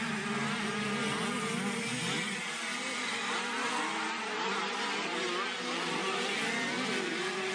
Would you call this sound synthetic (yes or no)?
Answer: no